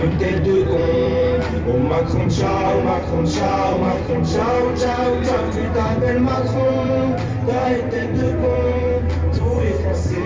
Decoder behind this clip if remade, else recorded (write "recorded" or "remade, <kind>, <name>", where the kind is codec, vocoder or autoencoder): remade, vocoder, BigVGAN v2